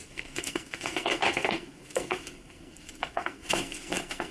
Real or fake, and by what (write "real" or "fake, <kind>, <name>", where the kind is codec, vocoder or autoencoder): fake, codec, SNAC